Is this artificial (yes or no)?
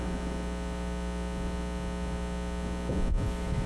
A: no